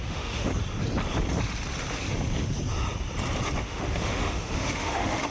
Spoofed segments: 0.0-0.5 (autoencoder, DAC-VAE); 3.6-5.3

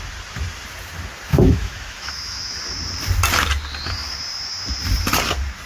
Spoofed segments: 1.3-2.4 (autoencoder, DAC-VAE)